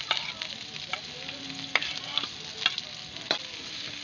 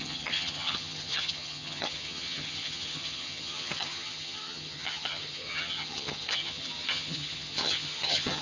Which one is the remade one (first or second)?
second